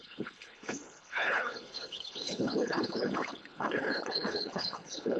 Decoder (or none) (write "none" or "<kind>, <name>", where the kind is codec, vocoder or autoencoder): codec, HILCodec